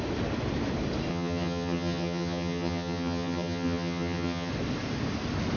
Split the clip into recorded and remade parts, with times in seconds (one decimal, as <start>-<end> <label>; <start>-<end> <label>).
0.0-1.1 recorded; 1.1-4.5 remade; 4.5-5.6 recorded